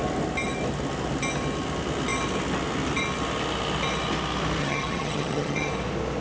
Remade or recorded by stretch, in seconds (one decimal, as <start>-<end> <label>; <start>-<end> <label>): 0.0-4.6 recorded; 4.6-5.7 remade; 5.7-6.2 recorded